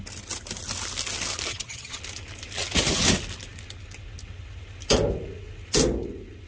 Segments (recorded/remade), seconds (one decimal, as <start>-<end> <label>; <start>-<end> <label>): 0.0-1.5 recorded; 1.5-2.0 remade; 2.0-6.5 recorded

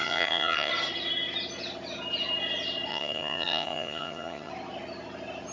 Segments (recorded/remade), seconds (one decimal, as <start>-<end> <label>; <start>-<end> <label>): 0.0-0.7 remade; 0.7-2.9 recorded; 2.9-4.5 remade; 4.5-5.5 recorded